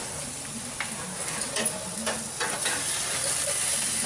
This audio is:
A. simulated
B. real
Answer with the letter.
B